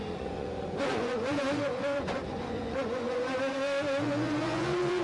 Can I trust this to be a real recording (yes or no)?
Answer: no